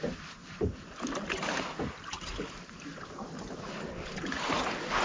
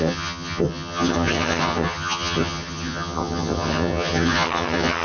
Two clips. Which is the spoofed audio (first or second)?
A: second